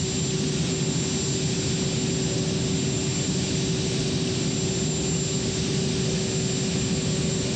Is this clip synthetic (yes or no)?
no